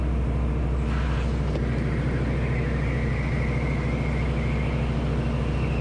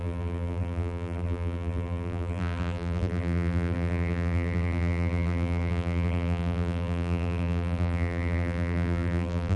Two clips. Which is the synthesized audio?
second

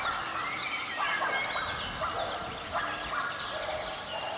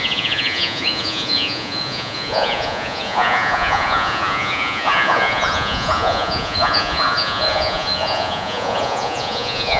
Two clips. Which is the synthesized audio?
second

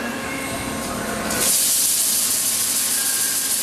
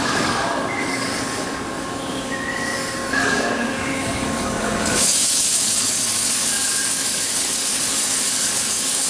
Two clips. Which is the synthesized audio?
second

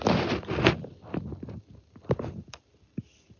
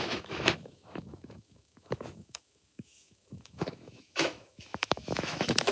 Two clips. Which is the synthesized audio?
second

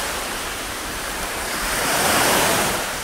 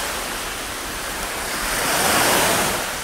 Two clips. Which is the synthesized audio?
first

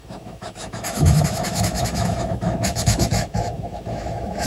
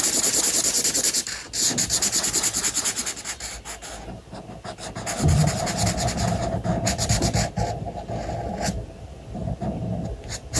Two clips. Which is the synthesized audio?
first